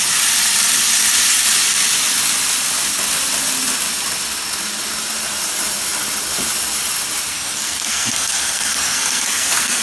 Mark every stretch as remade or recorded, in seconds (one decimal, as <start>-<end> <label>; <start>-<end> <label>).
0.0-7.3 recorded; 7.3-9.8 remade